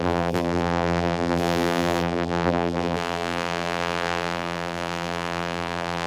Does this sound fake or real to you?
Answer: fake